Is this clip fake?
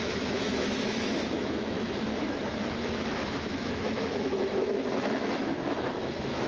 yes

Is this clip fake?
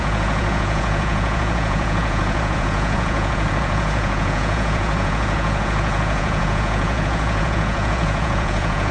yes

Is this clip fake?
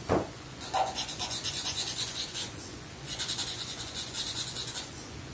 yes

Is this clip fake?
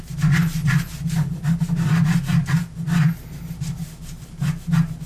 no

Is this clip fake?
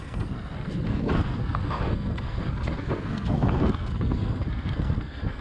yes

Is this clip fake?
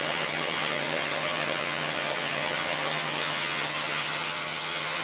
yes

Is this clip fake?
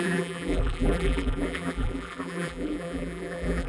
yes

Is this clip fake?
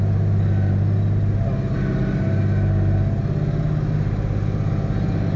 no